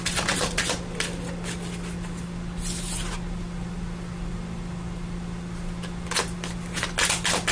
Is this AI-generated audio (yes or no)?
no